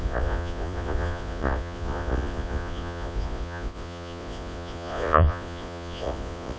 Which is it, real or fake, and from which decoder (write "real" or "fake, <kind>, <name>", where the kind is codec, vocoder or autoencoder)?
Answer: fake, vocoder, Vocos